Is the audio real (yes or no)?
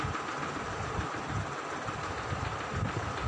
yes